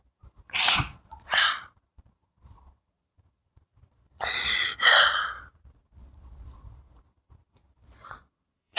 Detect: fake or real fake